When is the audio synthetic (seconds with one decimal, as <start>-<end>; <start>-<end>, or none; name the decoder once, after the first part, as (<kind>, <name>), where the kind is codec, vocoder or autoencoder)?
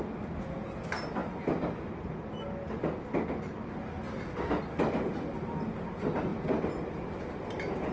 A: none